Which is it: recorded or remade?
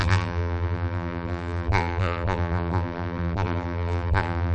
remade